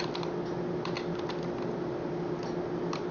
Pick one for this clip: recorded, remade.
recorded